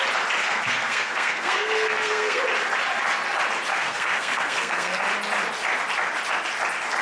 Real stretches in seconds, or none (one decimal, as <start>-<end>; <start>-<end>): 0.0-0.4; 2.4-3.7; 5.0-7.0